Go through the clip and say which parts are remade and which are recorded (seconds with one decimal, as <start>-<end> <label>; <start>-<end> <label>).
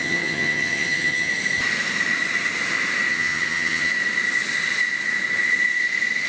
0.0-1.3 remade; 1.3-3.1 recorded; 3.1-3.9 remade; 3.9-6.3 recorded